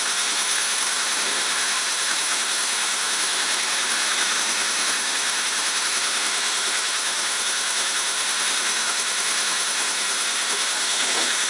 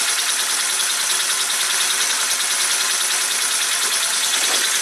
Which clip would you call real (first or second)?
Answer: second